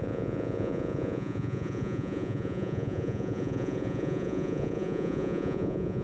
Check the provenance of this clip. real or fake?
fake